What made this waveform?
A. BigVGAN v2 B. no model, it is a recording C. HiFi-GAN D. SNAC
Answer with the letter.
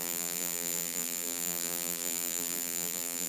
A